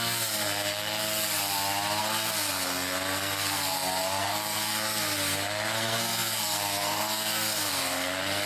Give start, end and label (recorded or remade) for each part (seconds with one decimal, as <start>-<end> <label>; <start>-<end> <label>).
0.0-1.0 remade; 1.0-2.0 recorded; 2.0-8.5 remade